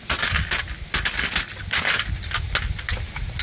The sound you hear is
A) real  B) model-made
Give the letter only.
A